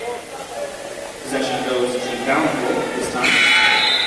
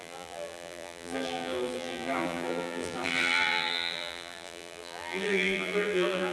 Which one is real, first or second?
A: first